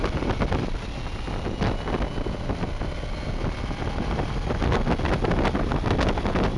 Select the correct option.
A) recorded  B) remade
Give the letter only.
A